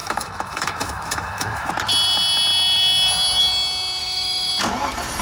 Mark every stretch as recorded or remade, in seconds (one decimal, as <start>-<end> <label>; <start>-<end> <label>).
0.0-1.7 remade; 1.7-4.0 recorded; 4.0-4.5 remade; 4.5-5.2 recorded